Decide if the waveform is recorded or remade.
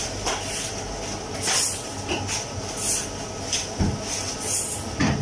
recorded